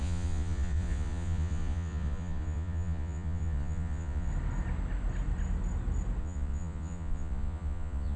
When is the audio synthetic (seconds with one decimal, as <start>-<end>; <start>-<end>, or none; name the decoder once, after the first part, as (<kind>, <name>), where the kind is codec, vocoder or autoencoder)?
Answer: 0.0-4.3 (vocoder, Vocos); 6.2-8.2